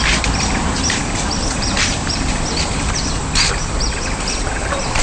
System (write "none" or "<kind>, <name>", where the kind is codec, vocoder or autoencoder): vocoder, BigVGAN v2